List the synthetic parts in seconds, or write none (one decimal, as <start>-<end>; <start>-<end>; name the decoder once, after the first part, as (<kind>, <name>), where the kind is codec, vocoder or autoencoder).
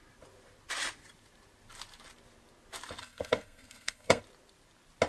3.0-4.2 (codec, SNAC)